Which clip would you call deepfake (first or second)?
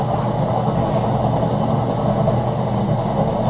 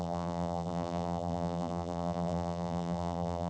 second